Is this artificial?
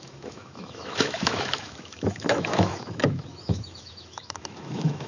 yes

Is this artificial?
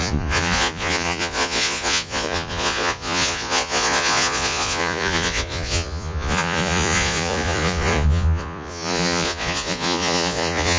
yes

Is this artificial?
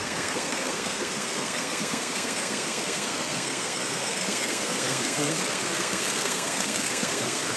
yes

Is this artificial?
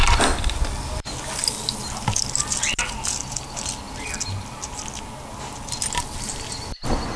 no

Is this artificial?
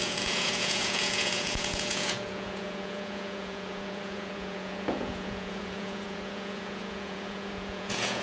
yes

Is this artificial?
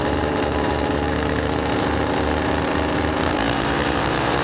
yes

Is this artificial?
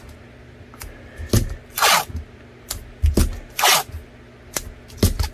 no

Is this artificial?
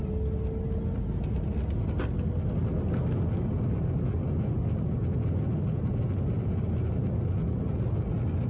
no